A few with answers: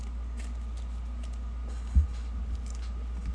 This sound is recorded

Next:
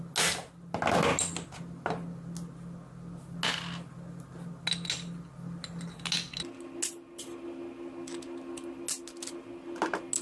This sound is recorded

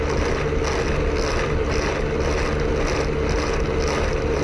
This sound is recorded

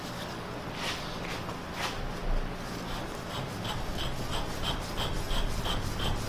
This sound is recorded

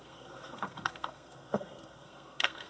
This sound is remade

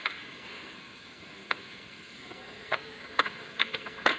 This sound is remade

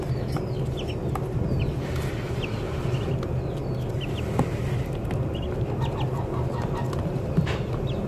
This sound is recorded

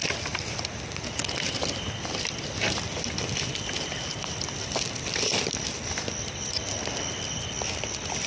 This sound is recorded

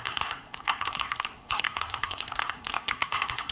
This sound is remade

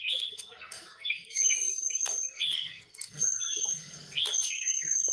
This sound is remade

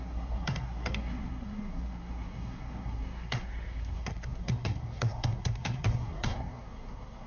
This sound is remade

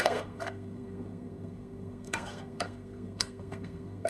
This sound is remade